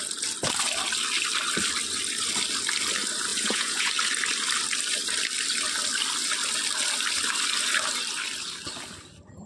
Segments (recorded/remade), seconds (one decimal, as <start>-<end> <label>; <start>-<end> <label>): 0.0-3.3 recorded; 3.3-3.9 remade; 3.9-9.5 recorded